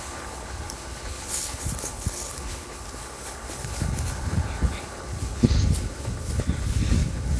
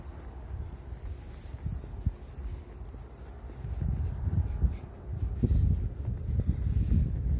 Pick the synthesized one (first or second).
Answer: first